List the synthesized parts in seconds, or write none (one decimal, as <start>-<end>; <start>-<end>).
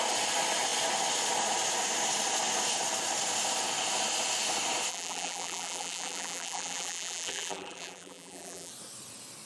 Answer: 4.9-8.7